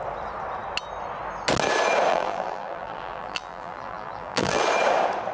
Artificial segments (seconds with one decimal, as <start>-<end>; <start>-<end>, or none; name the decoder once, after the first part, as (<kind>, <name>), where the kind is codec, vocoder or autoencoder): 2.1-4.6 (vocoder, BigVGAN v2)